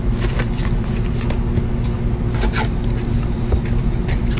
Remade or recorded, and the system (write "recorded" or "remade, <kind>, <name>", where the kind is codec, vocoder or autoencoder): recorded